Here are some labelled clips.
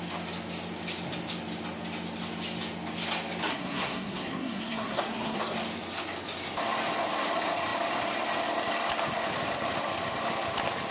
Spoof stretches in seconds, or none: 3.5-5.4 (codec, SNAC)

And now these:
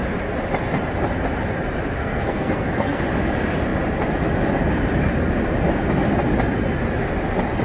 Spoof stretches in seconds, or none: 2.0-3.0 (codec, SNAC)

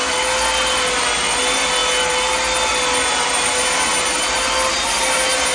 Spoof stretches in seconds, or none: none

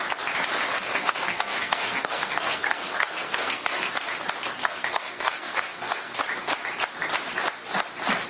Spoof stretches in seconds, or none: 0.7-3.9 (codec, SNAC); 4.6-6.2

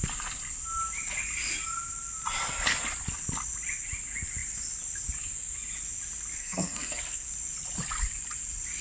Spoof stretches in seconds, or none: 6.4-7.3 (codec, SNAC)

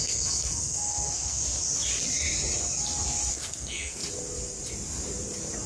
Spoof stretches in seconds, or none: 0.0-1.4 (codec, SNAC); 3.3-4.0